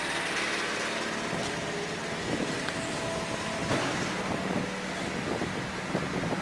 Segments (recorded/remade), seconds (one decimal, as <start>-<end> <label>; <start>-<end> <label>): 0.0-6.4 recorded